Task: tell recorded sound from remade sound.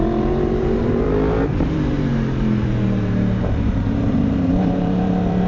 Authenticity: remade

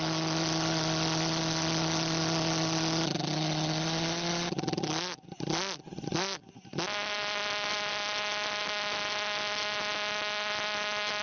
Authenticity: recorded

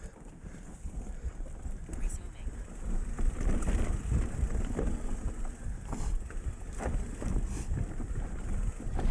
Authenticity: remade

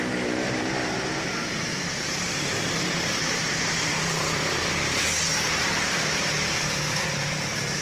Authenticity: remade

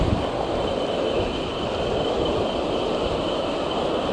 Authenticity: recorded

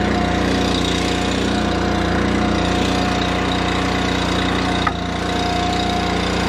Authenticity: recorded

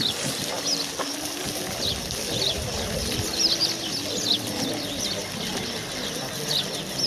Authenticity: recorded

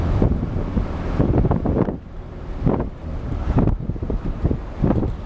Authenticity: remade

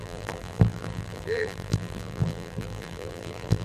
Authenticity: remade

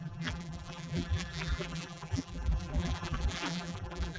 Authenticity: remade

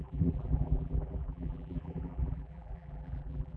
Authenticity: remade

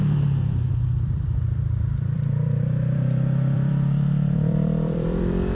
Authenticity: remade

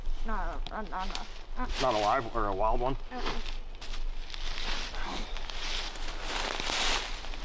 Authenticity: recorded